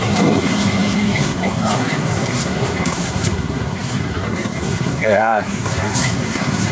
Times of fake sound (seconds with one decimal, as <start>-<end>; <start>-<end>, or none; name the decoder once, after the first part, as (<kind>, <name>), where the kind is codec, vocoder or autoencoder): 0.0-6.7 (codec, SNAC)